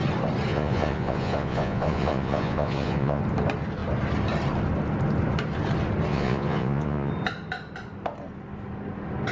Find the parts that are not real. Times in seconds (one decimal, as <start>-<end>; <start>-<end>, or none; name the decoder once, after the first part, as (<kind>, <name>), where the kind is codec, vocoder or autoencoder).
0.5-3.2 (vocoder, Vocos); 6.1-7.1